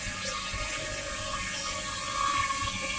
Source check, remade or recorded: remade